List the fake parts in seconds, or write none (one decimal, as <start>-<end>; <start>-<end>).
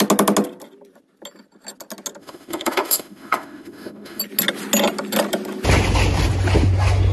2.2-4.2